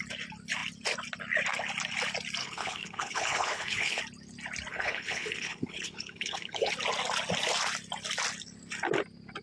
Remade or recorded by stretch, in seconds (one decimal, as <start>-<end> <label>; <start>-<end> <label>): 0.0-2.4 recorded; 2.4-4.0 remade; 4.0-4.7 recorded; 4.7-6.7 remade; 6.7-9.4 recorded